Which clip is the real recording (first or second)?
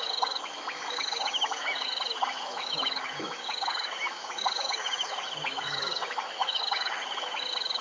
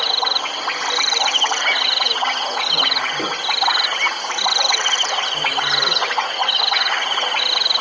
second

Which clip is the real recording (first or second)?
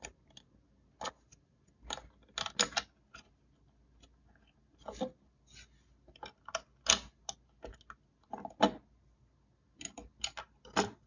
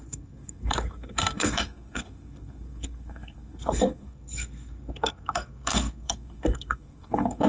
first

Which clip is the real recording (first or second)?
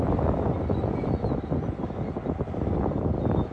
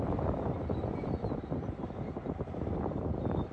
first